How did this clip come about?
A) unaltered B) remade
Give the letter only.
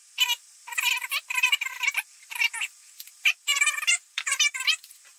B